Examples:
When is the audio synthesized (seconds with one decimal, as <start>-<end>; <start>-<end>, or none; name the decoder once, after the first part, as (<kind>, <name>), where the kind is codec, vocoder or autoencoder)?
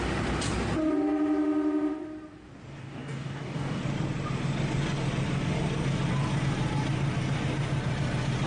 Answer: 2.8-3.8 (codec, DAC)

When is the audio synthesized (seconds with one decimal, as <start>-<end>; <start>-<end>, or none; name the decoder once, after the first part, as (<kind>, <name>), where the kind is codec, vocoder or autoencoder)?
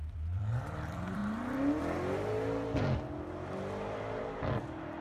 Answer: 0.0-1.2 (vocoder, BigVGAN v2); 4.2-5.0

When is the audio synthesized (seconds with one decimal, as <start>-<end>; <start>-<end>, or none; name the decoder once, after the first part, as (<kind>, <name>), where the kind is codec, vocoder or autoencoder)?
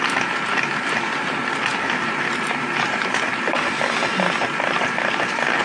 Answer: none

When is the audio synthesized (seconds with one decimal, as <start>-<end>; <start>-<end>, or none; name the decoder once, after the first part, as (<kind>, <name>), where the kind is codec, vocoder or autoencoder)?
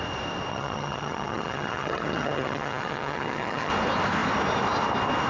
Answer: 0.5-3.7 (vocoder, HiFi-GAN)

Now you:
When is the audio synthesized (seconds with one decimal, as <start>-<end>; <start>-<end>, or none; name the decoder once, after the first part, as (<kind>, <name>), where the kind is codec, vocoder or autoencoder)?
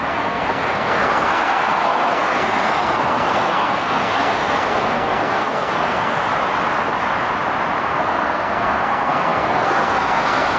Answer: 0.0-6.2 (codec, SNAC); 7.8-10.6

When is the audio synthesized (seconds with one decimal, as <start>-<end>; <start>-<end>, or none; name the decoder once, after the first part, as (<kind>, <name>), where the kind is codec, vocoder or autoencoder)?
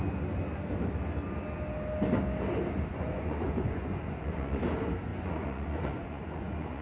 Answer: 2.9-4.6 (vocoder, Vocos); 5.1-6.8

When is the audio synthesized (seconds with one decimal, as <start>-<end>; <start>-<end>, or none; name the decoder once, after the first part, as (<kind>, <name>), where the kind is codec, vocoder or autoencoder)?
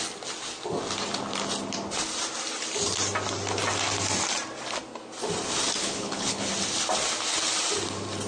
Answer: 5.8-6.5 (codec, HILCodec)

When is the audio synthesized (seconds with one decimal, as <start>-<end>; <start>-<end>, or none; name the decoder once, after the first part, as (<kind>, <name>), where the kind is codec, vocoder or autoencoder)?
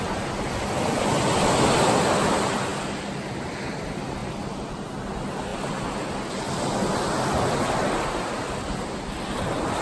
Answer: none